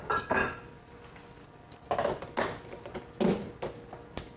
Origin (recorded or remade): recorded